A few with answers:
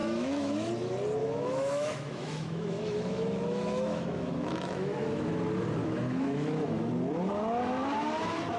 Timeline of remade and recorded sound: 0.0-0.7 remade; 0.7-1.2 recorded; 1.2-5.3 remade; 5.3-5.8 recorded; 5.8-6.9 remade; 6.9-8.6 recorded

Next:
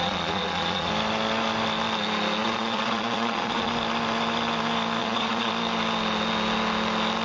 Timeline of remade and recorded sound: 0.0-0.9 remade; 0.9-2.4 recorded; 2.4-3.7 remade; 3.7-5.0 recorded; 5.0-5.5 remade; 5.5-7.2 recorded

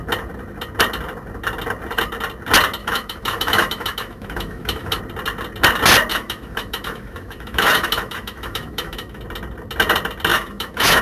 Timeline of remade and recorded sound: 0.0-2.8 recorded; 2.8-5.0 remade; 5.0-6.1 recorded; 6.1-9.2 remade; 9.2-10.3 recorded; 10.3-11.0 remade

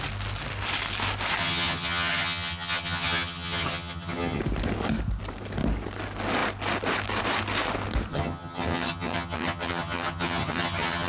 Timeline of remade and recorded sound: 0.0-1.4 recorded; 1.4-4.4 remade; 4.4-8.1 recorded; 8.1-11.1 remade

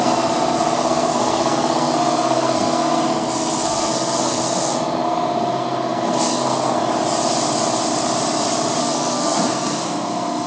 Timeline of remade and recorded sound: 0.0-6.8 remade; 6.8-8.8 recorded; 8.8-10.5 remade

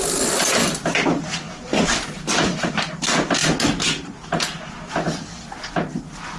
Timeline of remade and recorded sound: 0.0-6.4 recorded

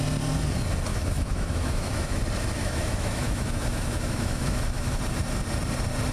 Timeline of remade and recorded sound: 0.0-0.9 recorded; 0.9-2.2 remade; 2.2-2.6 recorded; 2.6-5.0 remade; 5.0-6.1 recorded

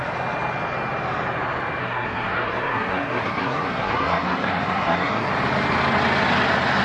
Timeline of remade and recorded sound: 0.0-1.8 recorded; 1.8-5.3 remade; 5.3-6.8 recorded